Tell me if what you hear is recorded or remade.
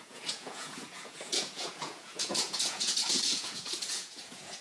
remade